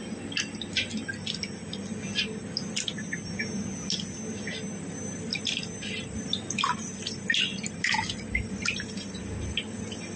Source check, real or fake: real